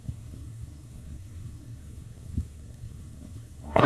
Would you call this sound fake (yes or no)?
yes